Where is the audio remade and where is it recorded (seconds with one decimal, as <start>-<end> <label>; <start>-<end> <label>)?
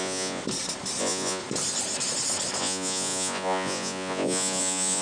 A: 0.0-0.4 remade; 0.4-1.0 recorded; 1.0-1.4 remade; 1.4-2.6 recorded; 2.6-5.0 remade